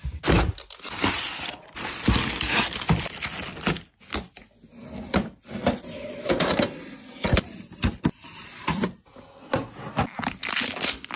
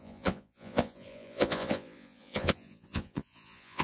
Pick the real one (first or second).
first